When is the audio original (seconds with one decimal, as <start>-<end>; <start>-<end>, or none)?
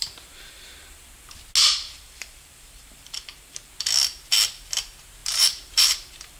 1.1-1.6; 3.7-5.2